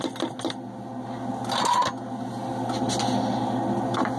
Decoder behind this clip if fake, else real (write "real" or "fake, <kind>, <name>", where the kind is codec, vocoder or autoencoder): real